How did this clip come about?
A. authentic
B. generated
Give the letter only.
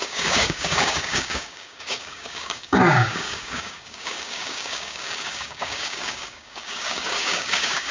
B